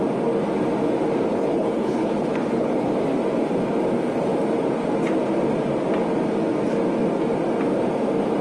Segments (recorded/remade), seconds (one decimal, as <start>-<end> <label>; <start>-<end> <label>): 0.0-1.3 recorded; 1.3-2.9 remade; 2.9-8.4 recorded